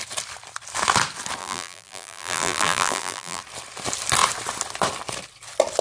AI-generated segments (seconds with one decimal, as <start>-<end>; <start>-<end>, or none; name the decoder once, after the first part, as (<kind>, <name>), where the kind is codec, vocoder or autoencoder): 1.4-3.4 (vocoder, BigVGAN v2)